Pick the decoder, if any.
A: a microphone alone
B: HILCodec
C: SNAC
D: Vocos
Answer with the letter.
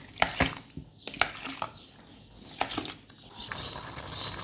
A